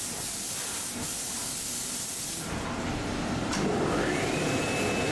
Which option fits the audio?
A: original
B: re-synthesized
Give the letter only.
A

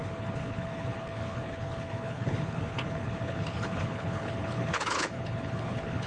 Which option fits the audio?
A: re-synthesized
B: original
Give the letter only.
A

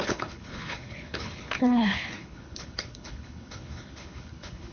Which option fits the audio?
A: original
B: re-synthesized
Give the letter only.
B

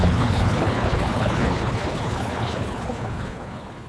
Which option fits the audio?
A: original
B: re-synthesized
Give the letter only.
B